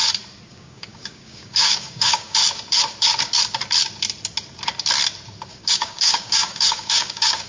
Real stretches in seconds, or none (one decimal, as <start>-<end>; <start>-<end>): 0.0-0.5; 2.4-5.5